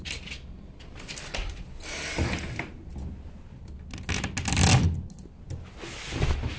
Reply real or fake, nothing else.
real